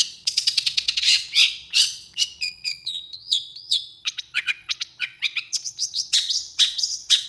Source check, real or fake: fake